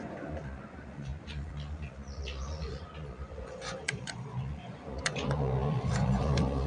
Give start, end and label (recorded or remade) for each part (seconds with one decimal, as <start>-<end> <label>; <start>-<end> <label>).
0.0-6.7 remade